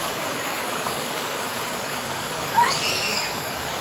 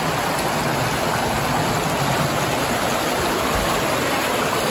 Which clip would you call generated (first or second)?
first